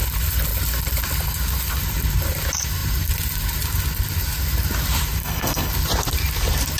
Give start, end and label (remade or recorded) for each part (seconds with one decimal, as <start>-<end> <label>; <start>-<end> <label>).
0.0-5.2 recorded; 5.2-5.7 remade; 5.7-6.8 recorded

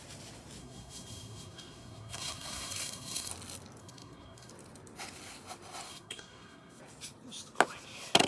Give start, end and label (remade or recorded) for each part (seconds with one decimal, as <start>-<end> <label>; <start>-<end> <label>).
0.0-0.6 recorded; 0.6-3.3 remade; 3.3-3.8 recorded; 3.8-4.5 remade; 4.5-5.9 recorded; 5.9-6.8 remade; 6.8-8.3 recorded

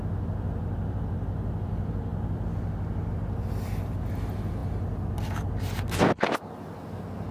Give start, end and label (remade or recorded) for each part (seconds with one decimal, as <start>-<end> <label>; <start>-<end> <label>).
0.0-7.3 recorded

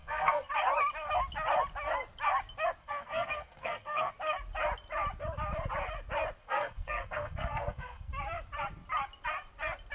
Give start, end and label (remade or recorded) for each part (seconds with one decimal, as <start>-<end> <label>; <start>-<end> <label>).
0.0-0.5 remade; 0.5-2.8 recorded; 2.8-4.1 remade; 4.1-6.4 recorded; 6.4-8.1 remade; 8.1-9.9 recorded

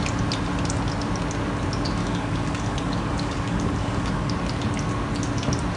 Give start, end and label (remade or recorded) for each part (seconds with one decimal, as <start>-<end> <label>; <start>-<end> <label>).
0.0-2.0 recorded; 2.0-4.3 remade; 4.3-5.8 recorded

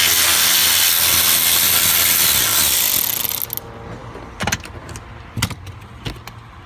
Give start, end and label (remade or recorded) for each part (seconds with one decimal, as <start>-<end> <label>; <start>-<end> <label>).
0.0-6.7 recorded

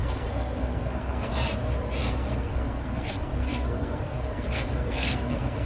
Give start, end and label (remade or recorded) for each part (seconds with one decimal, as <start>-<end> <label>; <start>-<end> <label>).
0.0-1.3 remade; 1.3-2.0 recorded; 2.0-5.7 remade

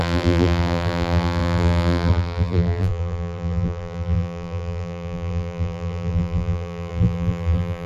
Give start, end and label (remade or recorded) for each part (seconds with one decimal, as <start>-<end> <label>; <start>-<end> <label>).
0.0-7.9 remade